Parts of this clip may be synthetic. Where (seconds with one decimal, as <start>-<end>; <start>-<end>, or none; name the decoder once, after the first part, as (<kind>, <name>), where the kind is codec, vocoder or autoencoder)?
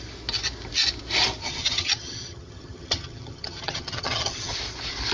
1.4-4.5 (vocoder, HiFi-GAN)